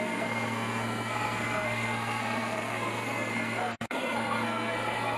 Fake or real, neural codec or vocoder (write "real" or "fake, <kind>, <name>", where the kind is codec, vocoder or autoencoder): fake, codec, SNAC